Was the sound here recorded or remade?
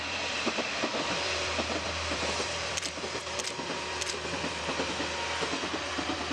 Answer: remade